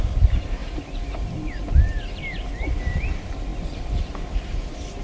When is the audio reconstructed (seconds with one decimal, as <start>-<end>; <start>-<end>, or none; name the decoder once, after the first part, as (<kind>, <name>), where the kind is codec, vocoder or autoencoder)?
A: 0.0-3.5 (vocoder, BigVGAN v2); 4.2-5.0